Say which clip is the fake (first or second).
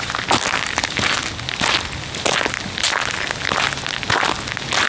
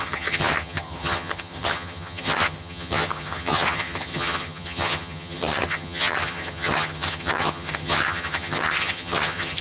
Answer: second